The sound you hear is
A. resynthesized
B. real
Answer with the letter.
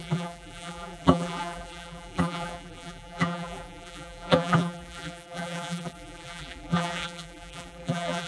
A